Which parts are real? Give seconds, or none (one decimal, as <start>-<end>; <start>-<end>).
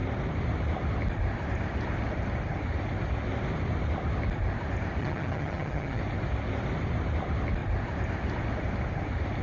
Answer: 0.0-5.0; 6.0-9.4